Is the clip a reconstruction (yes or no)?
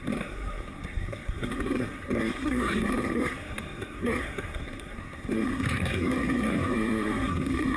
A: yes